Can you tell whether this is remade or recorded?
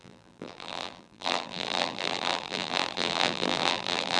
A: remade